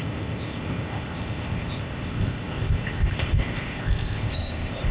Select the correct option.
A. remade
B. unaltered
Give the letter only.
A